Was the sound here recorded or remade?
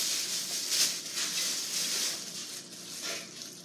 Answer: recorded